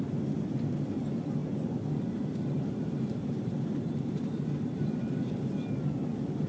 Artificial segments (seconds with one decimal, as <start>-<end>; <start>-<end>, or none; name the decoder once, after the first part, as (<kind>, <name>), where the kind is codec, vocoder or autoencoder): 1.4-5.3 (vocoder, BigVGAN v2)